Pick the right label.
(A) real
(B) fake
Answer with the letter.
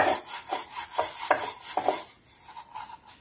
A